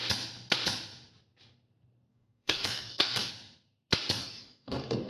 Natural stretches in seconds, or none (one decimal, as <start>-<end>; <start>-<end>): 0.0-2.1; 3.3-4.2